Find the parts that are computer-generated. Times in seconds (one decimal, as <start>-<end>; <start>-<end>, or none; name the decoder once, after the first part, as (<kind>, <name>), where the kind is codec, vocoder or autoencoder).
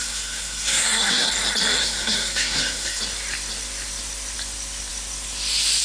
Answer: 0.0-1.3 (codec, SNAC); 1.8-3.0